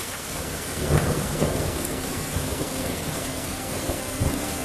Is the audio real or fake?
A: fake